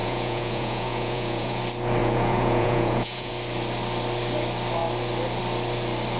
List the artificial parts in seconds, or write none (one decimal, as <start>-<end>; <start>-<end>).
0.0-1.6; 2.0-3.3